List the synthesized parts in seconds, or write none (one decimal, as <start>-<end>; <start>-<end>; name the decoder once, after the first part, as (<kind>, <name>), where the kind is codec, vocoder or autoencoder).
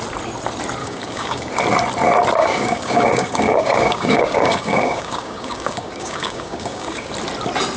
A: 0.8-1.5 (codec, DAC); 2.4-7.1